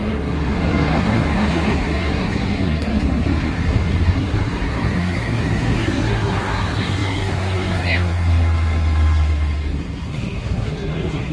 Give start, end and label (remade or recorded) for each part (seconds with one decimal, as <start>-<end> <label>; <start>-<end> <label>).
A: 0.0-11.3 remade